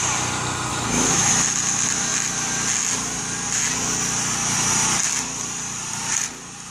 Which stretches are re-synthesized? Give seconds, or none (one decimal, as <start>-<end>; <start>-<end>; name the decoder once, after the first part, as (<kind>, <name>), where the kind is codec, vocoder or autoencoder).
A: 0.7-1.3 (autoencoder, DAC-VAE)